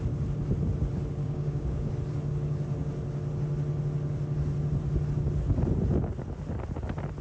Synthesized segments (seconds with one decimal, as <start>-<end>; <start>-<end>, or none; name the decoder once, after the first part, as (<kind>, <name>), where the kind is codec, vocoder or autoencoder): 1.2-1.9 (codec, DAC)